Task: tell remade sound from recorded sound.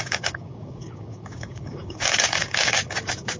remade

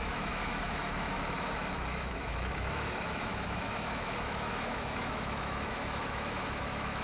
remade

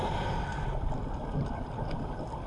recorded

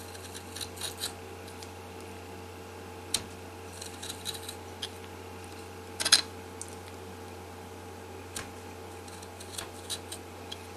recorded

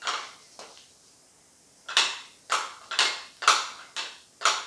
recorded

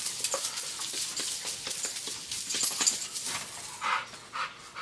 recorded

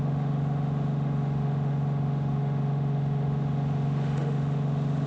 remade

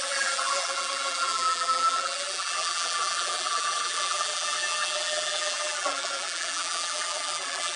remade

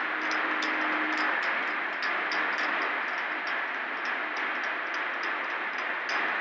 recorded